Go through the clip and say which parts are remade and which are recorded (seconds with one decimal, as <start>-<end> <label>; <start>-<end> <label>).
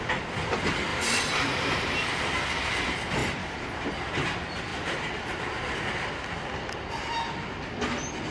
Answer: 0.0-0.9 recorded; 0.9-1.9 remade; 1.9-3.2 recorded; 3.2-3.7 remade; 3.7-4.7 recorded; 4.7-5.9 remade; 5.9-8.3 recorded